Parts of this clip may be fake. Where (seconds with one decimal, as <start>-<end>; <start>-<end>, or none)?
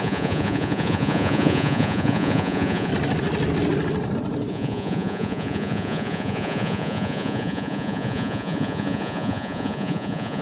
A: 0.0-2.9; 4.5-10.4